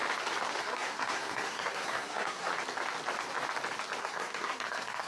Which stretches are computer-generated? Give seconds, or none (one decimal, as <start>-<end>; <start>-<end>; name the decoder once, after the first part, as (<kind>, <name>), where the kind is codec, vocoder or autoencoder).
0.6-2.5 (codec, SNAC); 4.0-5.1